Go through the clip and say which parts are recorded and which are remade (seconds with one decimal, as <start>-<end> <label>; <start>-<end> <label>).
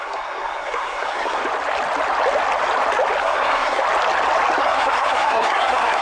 0.0-1.4 remade; 1.4-3.2 recorded; 3.2-3.8 remade; 3.8-4.6 recorded; 4.6-6.0 remade